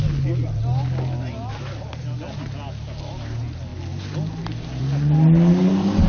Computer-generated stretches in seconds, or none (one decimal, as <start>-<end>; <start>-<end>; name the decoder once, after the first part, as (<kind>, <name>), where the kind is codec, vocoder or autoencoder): none